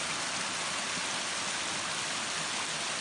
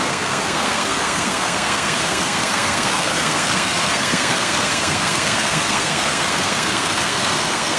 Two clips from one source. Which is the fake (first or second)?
second